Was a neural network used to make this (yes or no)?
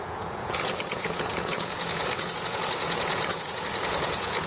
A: yes